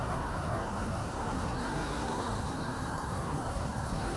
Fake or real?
fake